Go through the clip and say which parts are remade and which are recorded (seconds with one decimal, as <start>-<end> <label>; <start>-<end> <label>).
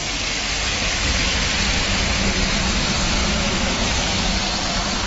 0.0-3.2 recorded; 3.2-4.3 remade; 4.3-5.1 recorded